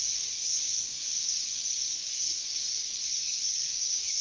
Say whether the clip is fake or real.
fake